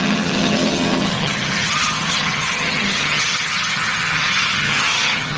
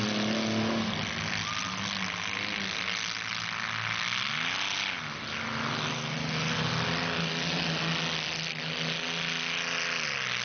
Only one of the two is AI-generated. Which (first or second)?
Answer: first